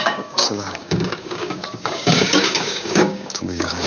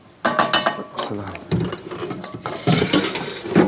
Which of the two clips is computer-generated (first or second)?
first